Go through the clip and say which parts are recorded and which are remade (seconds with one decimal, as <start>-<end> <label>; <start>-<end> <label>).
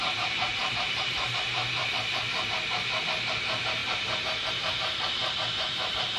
0.0-1.6 remade; 1.6-3.0 recorded; 3.0-5.2 remade; 5.2-6.2 recorded